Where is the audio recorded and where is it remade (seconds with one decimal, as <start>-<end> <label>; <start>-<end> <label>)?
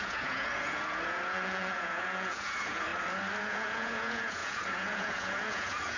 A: 0.0-2.9 remade; 2.9-3.4 recorded; 3.4-6.0 remade